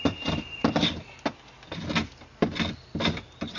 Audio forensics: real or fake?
real